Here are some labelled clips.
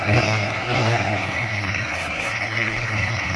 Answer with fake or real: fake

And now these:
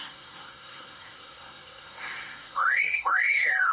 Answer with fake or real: fake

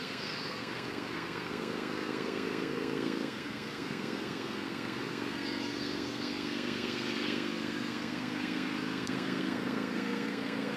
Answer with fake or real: fake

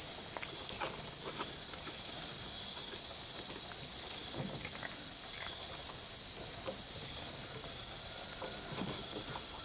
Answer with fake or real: real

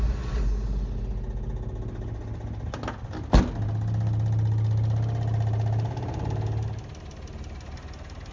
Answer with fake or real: real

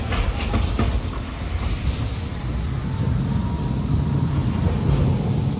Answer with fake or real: real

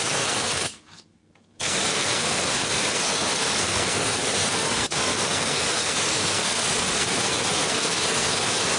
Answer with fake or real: fake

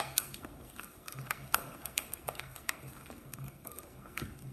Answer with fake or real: fake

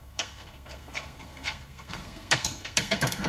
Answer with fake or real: fake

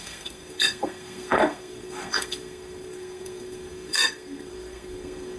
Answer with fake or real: fake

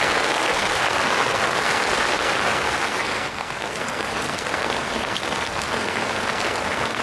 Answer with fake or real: fake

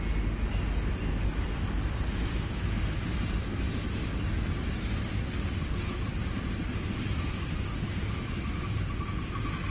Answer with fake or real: real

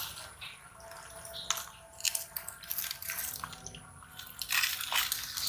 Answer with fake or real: real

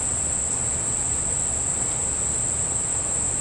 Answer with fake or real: real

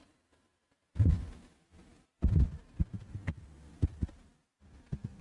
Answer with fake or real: real